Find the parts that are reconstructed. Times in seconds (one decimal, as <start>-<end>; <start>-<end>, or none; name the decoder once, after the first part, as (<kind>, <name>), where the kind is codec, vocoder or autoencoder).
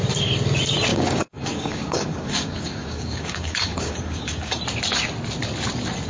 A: 0.9-4.6 (codec, DAC)